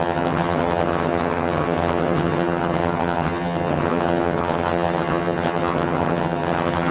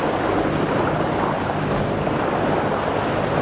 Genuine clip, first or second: second